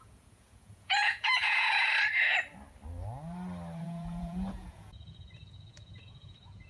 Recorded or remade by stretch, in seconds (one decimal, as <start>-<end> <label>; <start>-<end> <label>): 0.0-1.9 remade; 1.9-3.8 recorded; 3.8-6.7 remade